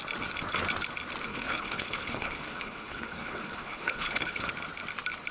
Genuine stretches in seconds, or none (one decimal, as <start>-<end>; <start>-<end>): 0.0-1.3; 4.5-5.3